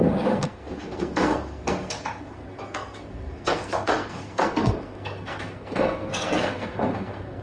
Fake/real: fake